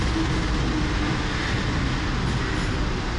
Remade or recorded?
recorded